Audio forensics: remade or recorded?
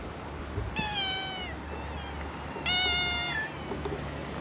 recorded